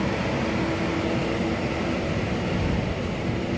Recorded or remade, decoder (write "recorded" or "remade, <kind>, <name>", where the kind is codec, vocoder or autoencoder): recorded